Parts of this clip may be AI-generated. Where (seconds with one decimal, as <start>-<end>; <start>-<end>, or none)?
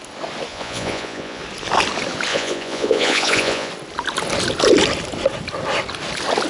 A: 0.5-1.4; 2.3-3.7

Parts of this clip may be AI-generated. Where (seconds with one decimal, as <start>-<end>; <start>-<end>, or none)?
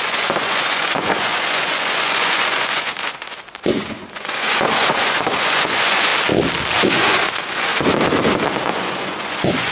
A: 0.0-6.1; 6.8-7.7; 8.6-9.7